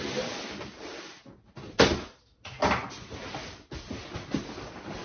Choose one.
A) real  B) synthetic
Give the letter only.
A